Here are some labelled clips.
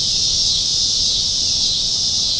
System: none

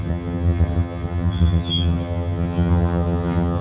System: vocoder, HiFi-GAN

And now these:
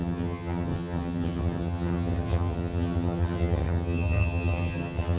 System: vocoder, HiFi-GAN